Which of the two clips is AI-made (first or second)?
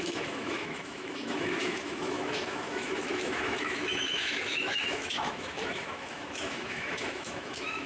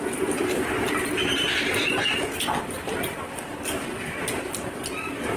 first